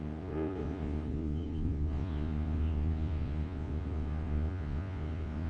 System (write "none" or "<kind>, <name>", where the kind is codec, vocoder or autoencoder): vocoder, Vocos